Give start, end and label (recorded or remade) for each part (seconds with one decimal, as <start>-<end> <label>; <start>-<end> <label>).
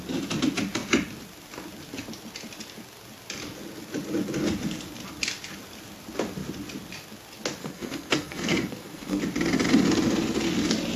0.0-7.6 recorded; 7.6-9.2 remade; 9.2-11.0 recorded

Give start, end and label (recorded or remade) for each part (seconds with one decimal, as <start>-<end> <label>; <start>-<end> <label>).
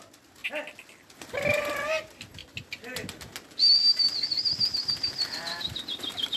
0.0-6.4 recorded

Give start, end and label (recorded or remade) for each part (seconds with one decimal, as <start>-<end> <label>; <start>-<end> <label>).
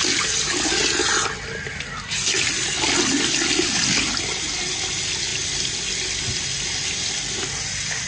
0.0-8.1 recorded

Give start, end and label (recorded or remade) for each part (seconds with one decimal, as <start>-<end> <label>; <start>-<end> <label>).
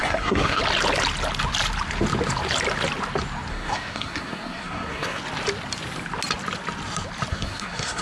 0.0-0.6 remade; 0.6-3.5 recorded; 3.5-5.2 remade; 5.2-7.3 recorded; 7.3-8.0 remade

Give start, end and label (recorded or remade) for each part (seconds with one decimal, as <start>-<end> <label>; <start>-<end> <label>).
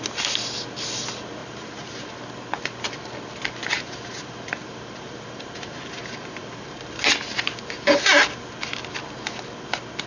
0.0-1.4 recorded; 1.4-2.1 remade; 2.1-3.7 recorded; 3.7-9.0 remade; 9.0-10.1 recorded